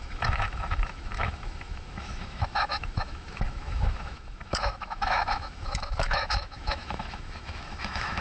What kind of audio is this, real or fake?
fake